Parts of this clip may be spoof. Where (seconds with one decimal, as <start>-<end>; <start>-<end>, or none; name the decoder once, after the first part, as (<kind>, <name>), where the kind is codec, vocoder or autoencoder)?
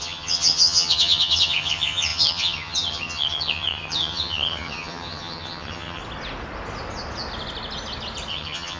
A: 0.0-6.0 (vocoder, HiFi-GAN); 8.3-8.8